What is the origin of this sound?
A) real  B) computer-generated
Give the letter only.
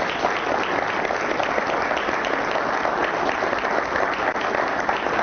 A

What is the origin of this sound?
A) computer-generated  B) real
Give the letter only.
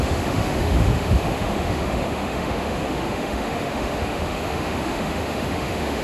A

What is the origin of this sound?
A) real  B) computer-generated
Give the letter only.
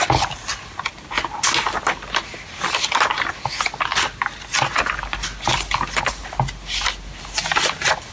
A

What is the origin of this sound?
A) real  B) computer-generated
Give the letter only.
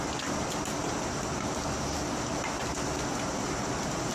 A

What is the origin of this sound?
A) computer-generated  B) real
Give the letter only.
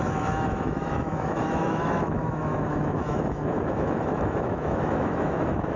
A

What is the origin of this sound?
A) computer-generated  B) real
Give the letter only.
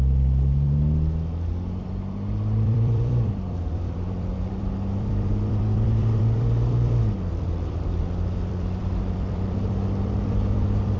A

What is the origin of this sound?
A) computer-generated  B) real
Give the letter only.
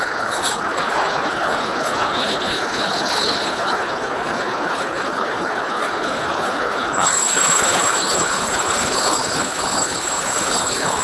A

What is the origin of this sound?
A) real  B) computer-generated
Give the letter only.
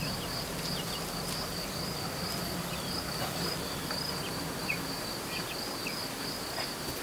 A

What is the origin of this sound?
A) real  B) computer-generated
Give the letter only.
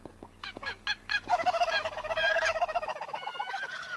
B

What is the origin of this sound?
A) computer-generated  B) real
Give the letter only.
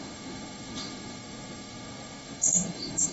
A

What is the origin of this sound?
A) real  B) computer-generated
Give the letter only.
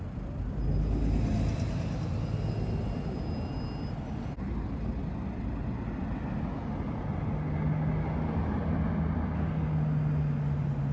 A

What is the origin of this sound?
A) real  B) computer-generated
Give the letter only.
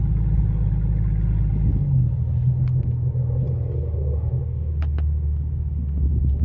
A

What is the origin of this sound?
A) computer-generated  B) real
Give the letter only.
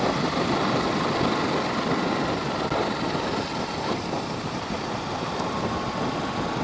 B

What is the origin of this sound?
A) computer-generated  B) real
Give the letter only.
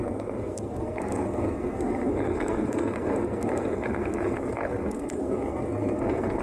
A